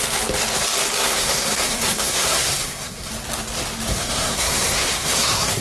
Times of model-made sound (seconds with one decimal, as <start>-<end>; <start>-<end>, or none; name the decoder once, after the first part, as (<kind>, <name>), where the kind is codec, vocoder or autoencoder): 1.0-3.1 (codec, SNAC); 3.9-5.6